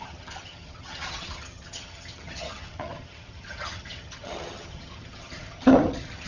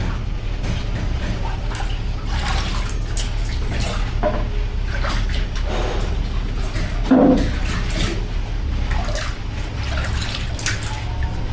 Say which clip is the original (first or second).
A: second